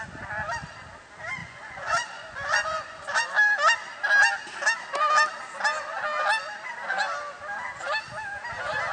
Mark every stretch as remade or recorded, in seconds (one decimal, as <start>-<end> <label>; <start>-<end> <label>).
0.0-1.4 recorded; 1.4-3.3 remade; 3.3-8.9 recorded